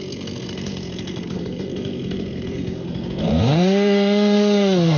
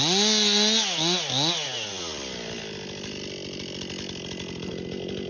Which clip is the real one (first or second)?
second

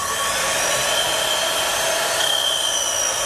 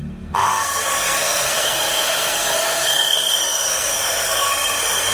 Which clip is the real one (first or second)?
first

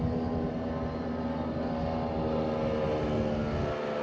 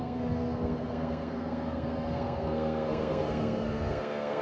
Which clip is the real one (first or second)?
first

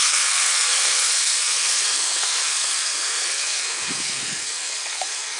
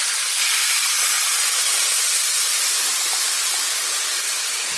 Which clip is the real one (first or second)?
second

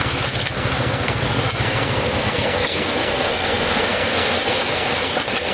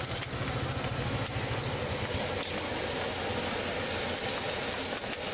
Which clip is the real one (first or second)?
second